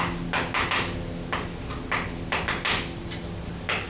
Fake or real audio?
real